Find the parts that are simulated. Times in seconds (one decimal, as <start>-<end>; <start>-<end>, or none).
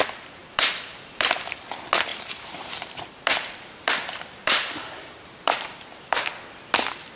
0.4-1.6; 2.1-3.9; 4.4-6.3